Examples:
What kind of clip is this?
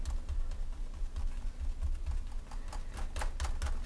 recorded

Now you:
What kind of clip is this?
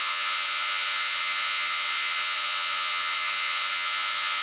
remade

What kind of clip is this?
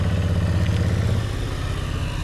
recorded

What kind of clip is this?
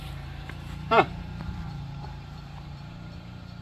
remade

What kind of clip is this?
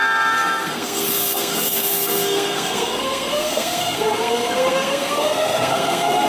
remade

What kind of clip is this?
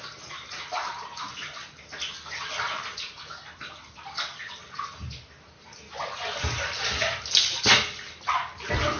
recorded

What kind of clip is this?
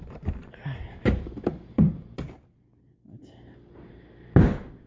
recorded